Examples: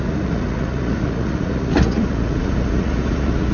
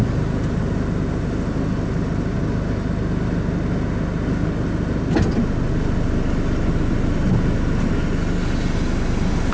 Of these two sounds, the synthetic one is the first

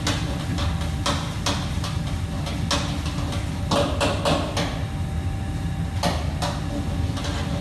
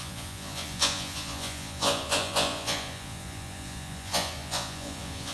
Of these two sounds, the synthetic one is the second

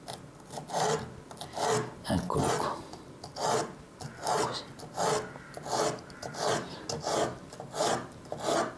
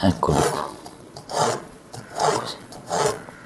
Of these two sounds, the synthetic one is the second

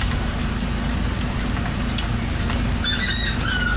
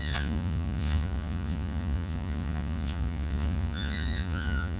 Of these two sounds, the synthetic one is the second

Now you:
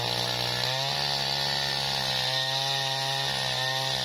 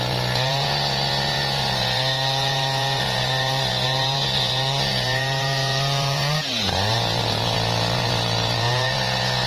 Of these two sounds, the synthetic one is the second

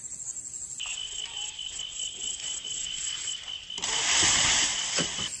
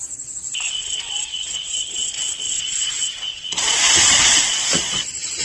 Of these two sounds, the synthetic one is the second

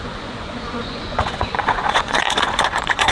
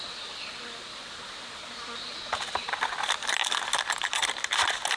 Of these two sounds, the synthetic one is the first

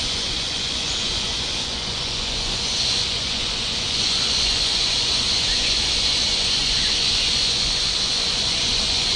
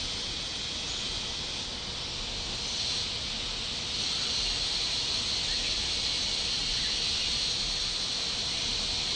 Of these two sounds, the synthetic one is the first